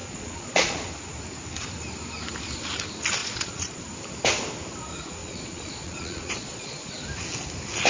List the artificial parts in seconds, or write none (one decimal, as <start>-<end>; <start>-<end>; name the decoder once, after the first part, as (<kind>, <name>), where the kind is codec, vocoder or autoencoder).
0.0-0.9 (vocoder, Vocos); 3.2-3.8; 5.2-6.9